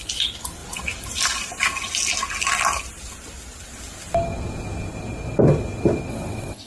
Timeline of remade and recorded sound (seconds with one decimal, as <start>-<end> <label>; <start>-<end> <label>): 0.0-6.1 recorded; 6.1-6.7 remade